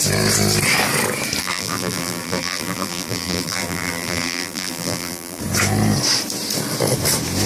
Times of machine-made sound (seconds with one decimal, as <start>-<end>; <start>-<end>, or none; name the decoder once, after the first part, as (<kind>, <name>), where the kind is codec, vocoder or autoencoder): 1.4-5.4 (vocoder, BigVGAN v2)